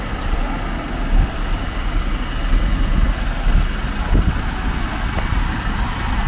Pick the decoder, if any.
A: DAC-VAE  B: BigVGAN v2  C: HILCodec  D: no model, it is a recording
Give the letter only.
D